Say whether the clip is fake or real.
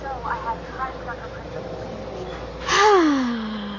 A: real